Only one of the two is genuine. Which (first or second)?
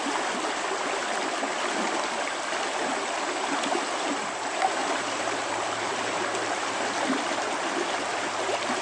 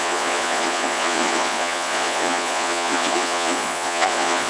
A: first